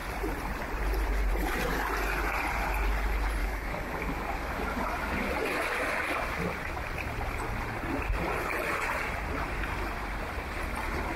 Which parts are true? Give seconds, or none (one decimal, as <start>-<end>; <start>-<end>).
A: 0.0-3.4; 5.3-11.2